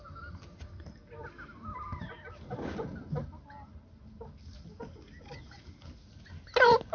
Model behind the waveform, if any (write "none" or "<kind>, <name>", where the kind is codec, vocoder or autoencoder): none